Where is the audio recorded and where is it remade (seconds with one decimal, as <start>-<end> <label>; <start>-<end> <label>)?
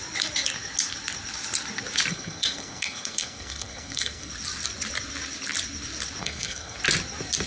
0.0-2.1 recorded; 2.1-4.3 remade; 4.3-6.2 recorded; 6.2-6.8 remade; 6.8-7.5 recorded